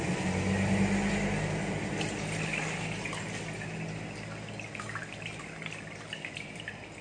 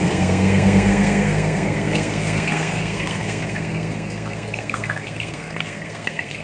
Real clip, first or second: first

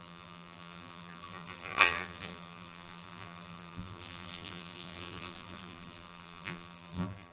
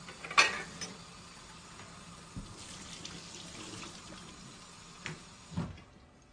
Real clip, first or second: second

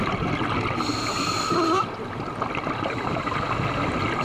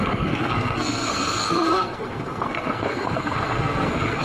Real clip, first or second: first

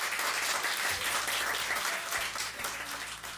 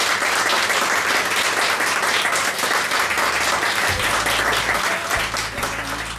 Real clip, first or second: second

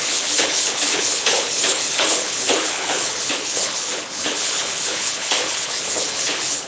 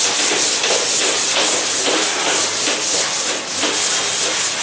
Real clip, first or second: second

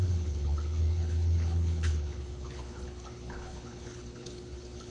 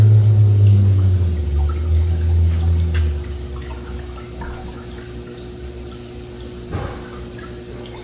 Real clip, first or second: second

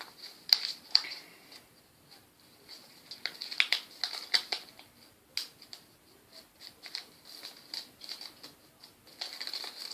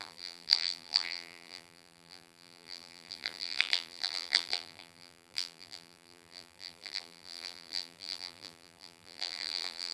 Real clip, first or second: first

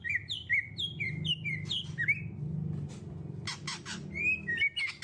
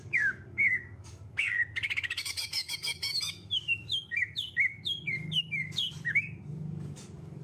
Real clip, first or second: first